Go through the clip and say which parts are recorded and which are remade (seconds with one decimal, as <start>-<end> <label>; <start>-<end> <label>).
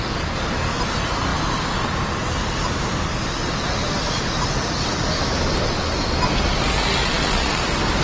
0.0-7.0 recorded; 7.0-7.6 remade; 7.6-8.0 recorded